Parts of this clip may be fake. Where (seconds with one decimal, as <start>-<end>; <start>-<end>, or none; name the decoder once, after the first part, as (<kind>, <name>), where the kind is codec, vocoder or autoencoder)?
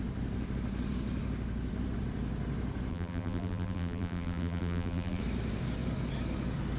2.9-5.2 (vocoder, BigVGAN v2)